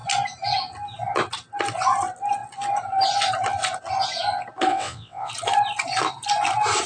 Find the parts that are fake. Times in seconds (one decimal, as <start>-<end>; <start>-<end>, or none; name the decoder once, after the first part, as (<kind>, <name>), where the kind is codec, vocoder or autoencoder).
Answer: 4.7-5.3 (vocoder, WaveNeXt)